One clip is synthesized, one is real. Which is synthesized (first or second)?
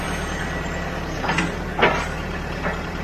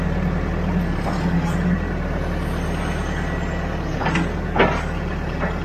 first